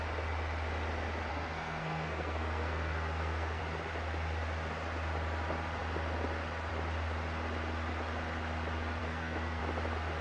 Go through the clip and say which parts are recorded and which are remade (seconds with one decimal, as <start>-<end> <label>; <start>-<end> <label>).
0.0-1.3 recorded; 1.3-3.6 remade; 3.6-9.0 recorded; 9.0-9.6 remade; 9.6-10.2 recorded